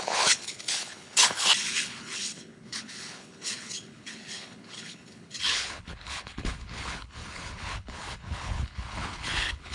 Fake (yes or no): yes